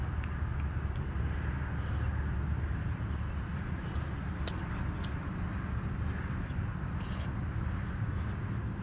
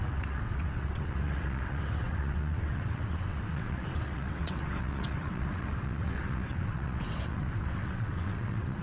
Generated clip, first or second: second